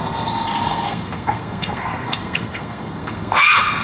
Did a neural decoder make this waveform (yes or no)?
yes